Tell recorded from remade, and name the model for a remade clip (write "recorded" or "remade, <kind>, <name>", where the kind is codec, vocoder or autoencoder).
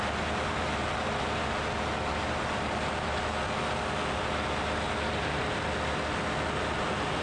recorded